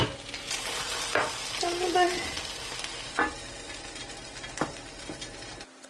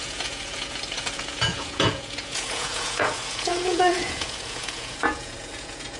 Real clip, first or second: first